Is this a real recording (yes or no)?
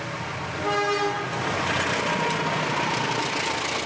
yes